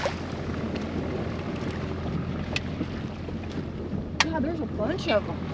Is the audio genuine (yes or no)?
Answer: yes